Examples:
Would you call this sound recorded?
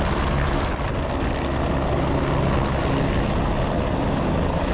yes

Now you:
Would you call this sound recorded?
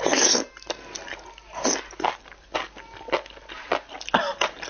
yes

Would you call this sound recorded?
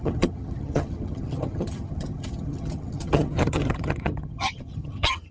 no